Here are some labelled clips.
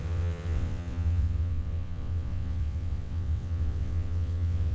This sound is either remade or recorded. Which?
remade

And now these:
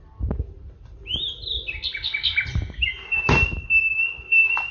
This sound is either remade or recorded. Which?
recorded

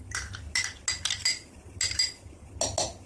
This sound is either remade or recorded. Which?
recorded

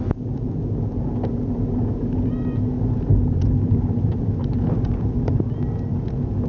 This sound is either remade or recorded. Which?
recorded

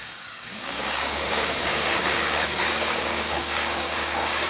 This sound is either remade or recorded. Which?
remade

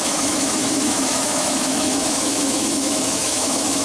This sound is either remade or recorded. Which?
remade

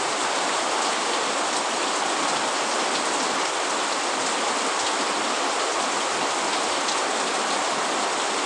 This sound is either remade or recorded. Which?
recorded